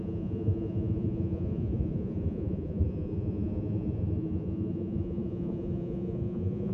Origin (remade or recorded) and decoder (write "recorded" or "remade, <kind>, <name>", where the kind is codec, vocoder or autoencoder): remade, vocoder, Vocos